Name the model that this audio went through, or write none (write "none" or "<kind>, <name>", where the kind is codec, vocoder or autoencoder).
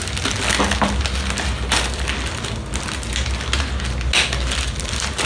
none